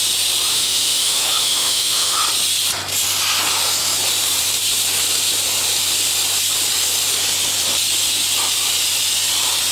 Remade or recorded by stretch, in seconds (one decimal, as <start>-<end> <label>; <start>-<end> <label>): 0.0-0.5 recorded; 0.5-2.2 remade; 2.2-9.7 recorded